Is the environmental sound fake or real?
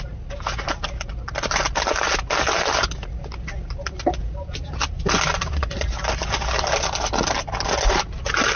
real